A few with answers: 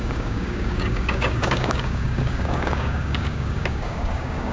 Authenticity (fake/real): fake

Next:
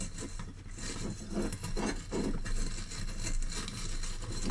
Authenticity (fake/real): real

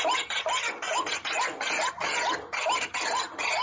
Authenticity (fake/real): real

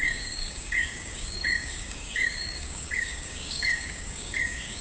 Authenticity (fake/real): fake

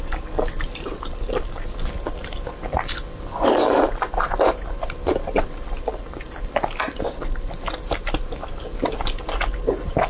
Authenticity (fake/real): real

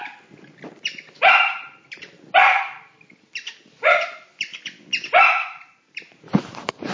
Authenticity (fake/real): real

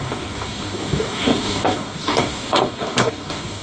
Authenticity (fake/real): fake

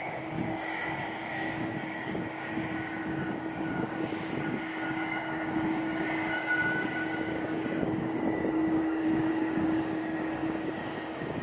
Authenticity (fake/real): fake